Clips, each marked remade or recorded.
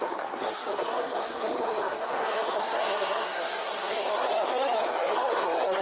remade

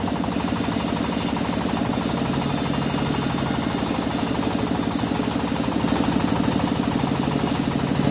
recorded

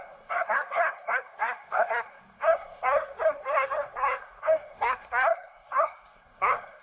remade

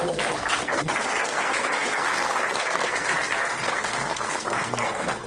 remade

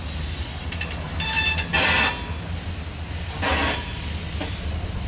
recorded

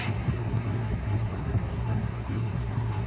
remade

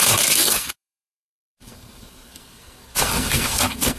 remade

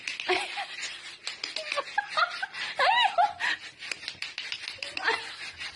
recorded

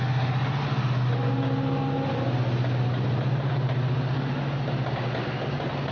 recorded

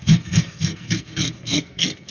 remade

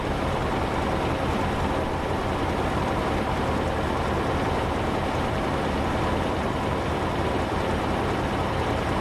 recorded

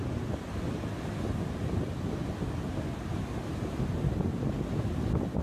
recorded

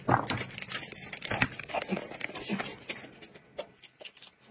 recorded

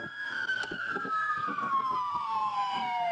remade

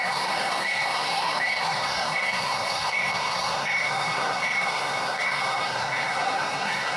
remade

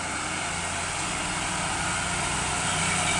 recorded